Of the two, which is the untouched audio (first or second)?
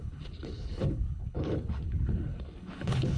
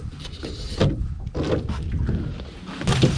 second